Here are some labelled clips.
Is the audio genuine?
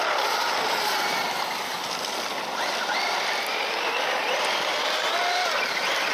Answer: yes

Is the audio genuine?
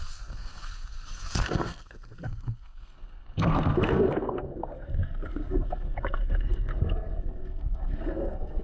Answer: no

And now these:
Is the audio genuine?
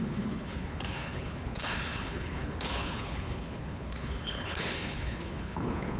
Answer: no